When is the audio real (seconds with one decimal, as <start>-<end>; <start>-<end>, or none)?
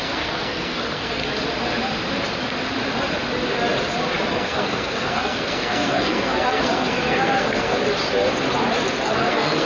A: 1.2-4.3; 7.7-9.0